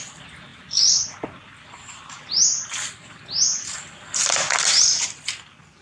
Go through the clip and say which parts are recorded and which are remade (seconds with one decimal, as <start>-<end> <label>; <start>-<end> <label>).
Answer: 0.0-0.5 recorded; 0.5-1.9 remade; 1.9-5.8 recorded